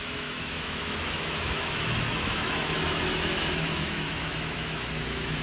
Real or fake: fake